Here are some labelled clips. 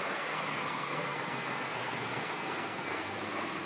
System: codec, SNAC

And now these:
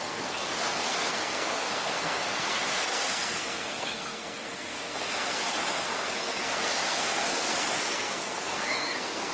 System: codec, SNAC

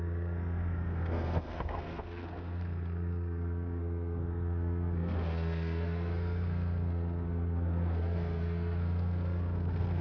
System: codec, SNAC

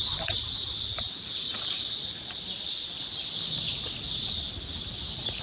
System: none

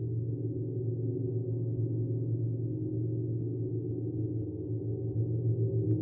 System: none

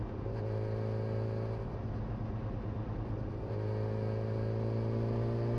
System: none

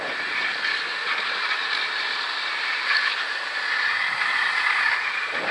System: none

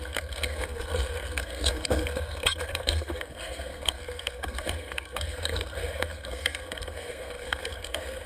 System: codec, SNAC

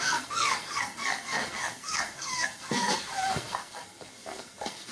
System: codec, SNAC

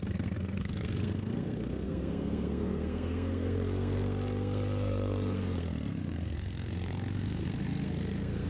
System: codec, SNAC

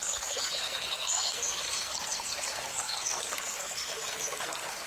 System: codec, SNAC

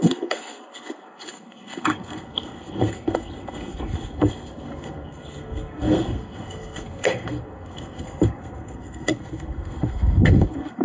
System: codec, SNAC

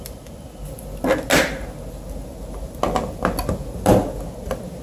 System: none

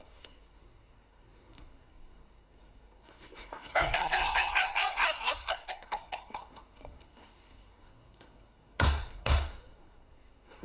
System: codec, SNAC